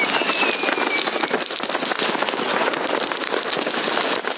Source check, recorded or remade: recorded